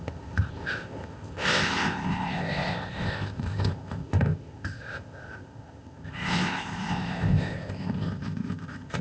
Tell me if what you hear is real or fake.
fake